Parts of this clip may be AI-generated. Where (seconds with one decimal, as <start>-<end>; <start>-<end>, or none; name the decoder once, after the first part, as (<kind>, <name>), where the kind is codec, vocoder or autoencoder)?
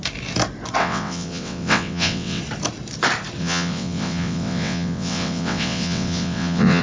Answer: 0.8-2.4 (vocoder, WaveNeXt); 3.4-6.8